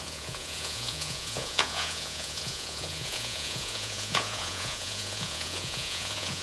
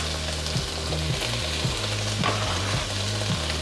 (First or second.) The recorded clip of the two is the second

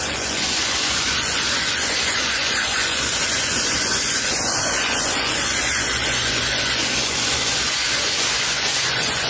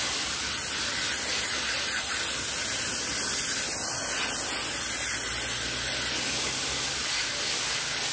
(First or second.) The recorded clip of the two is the second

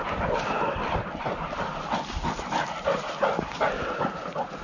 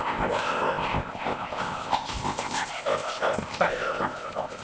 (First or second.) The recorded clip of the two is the first